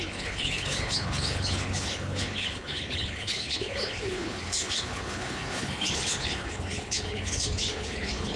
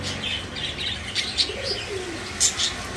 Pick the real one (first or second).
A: second